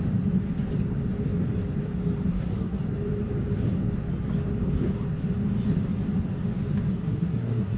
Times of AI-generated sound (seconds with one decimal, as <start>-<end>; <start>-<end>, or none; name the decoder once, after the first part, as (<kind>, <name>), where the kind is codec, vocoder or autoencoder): 2.3-2.8 (codec, SNAC); 6.9-7.8